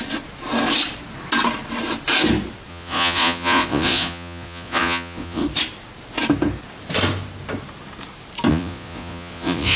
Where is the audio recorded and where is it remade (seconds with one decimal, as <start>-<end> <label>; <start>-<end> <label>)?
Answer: 0.0-2.7 recorded; 2.7-5.4 remade; 5.4-8.5 recorded; 8.5-9.8 remade